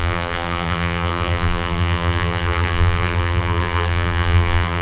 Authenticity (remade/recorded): remade